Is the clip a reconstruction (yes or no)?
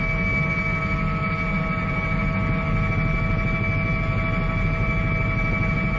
no